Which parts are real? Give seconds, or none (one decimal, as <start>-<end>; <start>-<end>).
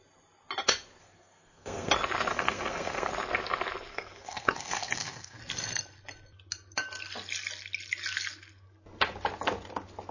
0.0-1.0; 1.9-2.3; 3.1-3.9; 5.4-10.1